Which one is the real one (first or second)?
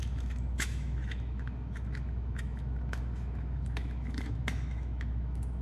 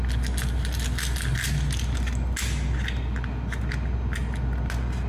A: second